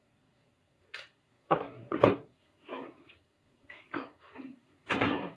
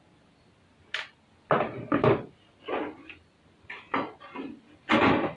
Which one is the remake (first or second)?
first